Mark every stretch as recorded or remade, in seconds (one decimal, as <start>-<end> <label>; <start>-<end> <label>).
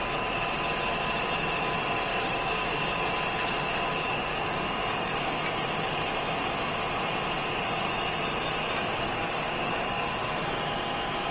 0.0-2.1 recorded; 2.1-2.9 remade; 2.9-4.3 recorded; 4.3-5.4 remade; 5.4-8.9 recorded; 8.9-10.2 remade; 10.2-11.3 recorded